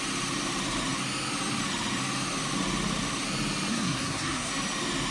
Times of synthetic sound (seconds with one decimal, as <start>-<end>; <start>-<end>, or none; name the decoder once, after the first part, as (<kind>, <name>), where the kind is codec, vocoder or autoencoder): 3.7-4.5 (codec, SNAC)